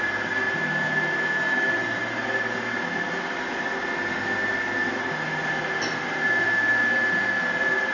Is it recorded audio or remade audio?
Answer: recorded